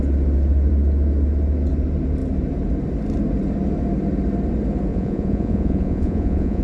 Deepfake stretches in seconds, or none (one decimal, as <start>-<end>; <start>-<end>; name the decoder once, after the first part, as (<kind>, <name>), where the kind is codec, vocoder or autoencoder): 4.9-6.6 (vocoder, Vocos)